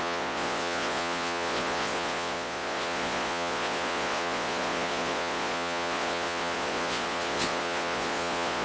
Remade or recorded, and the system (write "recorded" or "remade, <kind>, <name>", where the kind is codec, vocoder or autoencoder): remade, vocoder, Vocos